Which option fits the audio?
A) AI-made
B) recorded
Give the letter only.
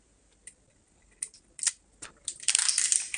A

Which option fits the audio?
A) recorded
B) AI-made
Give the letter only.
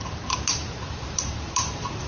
B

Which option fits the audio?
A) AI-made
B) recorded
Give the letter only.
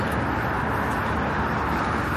B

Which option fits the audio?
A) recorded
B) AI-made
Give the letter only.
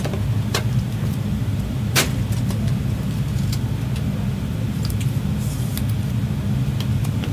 A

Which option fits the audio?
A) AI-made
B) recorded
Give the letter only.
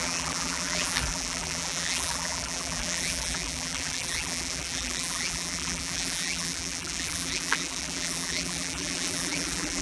A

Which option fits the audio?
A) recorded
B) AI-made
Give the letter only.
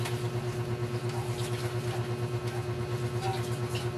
A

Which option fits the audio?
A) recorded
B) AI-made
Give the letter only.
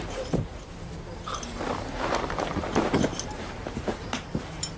B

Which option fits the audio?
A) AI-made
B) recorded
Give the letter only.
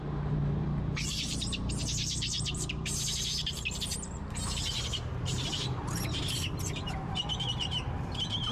A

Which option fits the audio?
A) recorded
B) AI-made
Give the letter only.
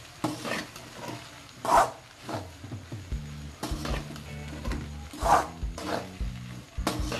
A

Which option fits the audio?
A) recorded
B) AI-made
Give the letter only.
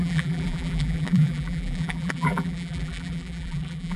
B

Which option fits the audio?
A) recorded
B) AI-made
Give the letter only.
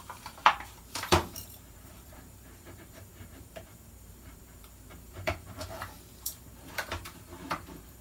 B